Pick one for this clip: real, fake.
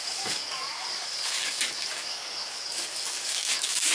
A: fake